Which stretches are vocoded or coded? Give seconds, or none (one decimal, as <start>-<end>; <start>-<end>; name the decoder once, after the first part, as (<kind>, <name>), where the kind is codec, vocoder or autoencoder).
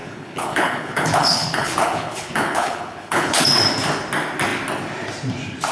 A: 0.0-3.4 (codec, HILCodec)